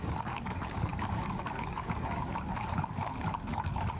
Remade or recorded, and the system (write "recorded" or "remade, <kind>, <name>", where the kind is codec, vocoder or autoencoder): remade, codec, DAC